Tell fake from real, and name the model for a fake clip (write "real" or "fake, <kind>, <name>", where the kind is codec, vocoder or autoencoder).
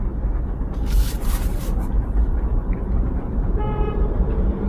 fake, vocoder, BigVGAN v2